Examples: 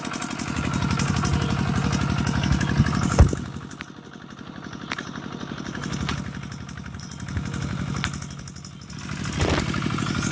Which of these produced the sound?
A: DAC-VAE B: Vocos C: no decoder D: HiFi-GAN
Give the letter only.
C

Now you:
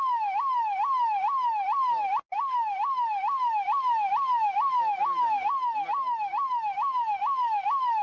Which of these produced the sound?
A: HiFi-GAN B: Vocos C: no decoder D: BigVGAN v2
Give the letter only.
C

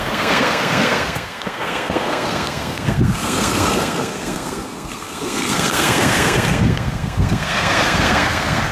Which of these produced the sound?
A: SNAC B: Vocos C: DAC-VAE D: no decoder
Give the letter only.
A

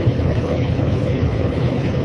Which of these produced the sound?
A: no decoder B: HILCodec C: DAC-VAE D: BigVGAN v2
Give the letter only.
B